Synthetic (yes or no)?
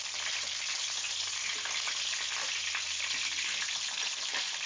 no